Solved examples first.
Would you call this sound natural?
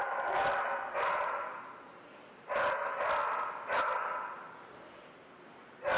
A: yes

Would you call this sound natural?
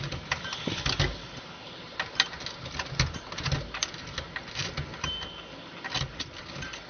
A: yes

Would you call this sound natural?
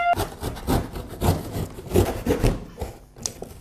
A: yes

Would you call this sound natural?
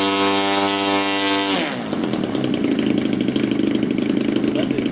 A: yes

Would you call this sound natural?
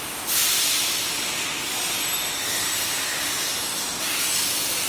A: yes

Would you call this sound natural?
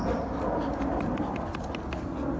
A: yes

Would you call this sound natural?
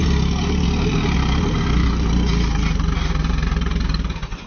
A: yes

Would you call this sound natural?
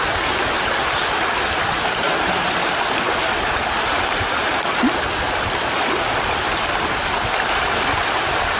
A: yes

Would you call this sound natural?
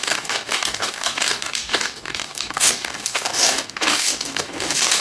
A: no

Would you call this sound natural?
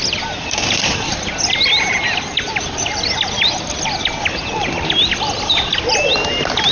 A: yes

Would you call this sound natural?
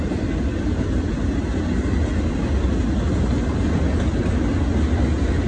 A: yes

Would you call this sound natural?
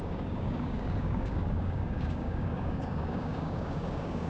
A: no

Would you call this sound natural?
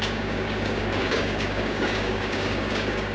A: no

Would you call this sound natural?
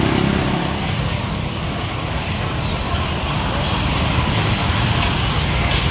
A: yes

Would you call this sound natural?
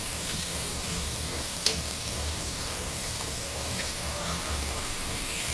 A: no